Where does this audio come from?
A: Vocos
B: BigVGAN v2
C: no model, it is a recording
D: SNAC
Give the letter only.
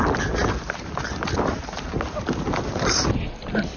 C